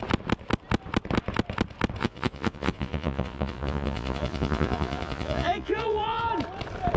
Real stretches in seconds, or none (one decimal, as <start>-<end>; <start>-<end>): 0.0-2.0; 6.2-7.0